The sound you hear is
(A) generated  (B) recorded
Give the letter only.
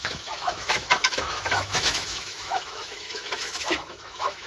A